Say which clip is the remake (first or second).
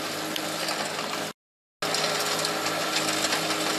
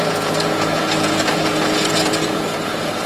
second